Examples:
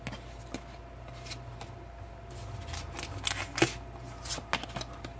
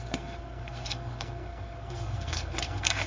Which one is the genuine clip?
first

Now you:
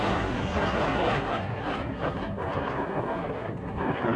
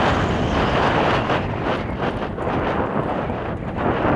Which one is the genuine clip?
second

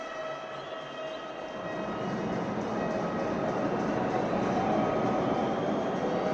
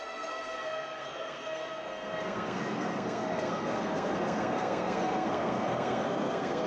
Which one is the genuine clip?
first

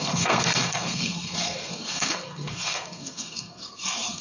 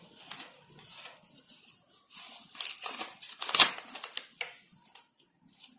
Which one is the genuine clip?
second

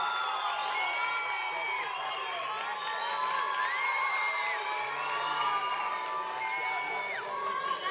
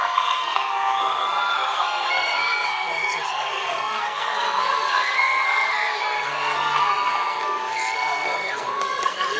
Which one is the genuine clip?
first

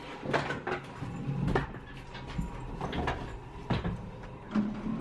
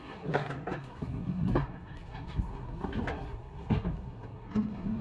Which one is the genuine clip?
first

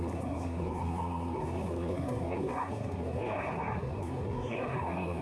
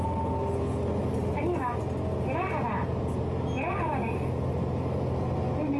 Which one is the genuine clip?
second